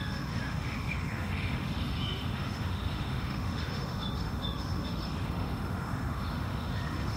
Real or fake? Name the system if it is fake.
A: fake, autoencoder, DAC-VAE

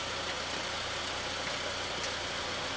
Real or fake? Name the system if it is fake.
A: real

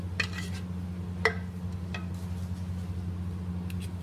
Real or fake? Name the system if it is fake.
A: real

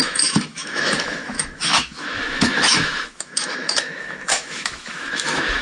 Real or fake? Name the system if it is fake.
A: fake, autoencoder, DAC-VAE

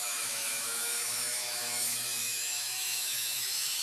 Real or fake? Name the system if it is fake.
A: fake, autoencoder, DAC-VAE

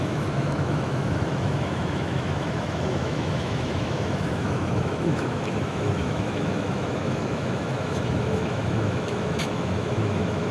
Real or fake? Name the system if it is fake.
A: fake, autoencoder, DAC-VAE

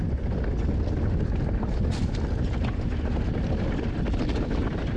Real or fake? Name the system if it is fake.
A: real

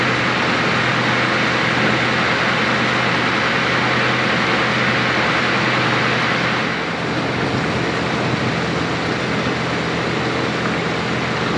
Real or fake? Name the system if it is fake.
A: real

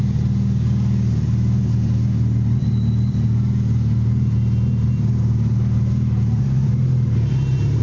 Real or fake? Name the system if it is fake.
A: real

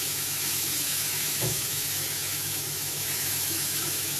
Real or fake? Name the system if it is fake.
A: fake, autoencoder, DAC-VAE